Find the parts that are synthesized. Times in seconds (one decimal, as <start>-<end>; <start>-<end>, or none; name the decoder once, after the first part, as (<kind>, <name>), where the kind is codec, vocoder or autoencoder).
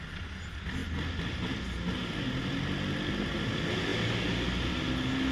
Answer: none